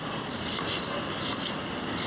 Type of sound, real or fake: real